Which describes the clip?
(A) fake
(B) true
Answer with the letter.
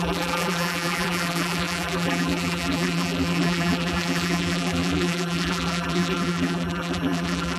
A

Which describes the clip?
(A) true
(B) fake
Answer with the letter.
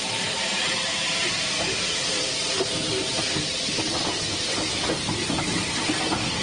A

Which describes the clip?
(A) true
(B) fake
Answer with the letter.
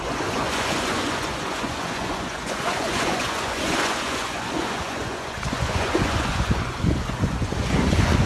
B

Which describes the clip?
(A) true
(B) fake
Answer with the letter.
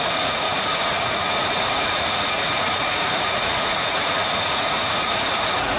B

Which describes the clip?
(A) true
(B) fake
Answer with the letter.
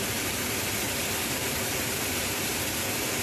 B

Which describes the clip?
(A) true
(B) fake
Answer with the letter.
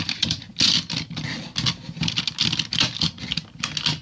A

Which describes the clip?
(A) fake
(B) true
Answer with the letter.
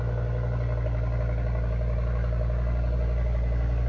B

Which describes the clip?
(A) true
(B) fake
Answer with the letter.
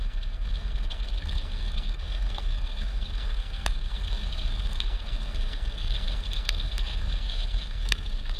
B